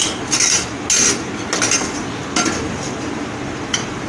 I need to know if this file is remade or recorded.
recorded